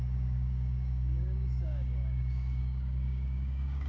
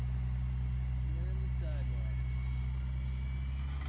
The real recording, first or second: second